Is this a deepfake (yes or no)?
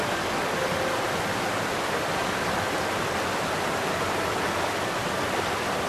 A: no